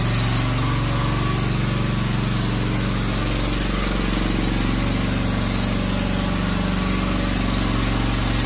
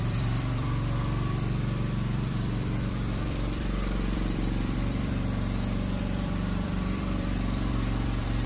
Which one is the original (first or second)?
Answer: first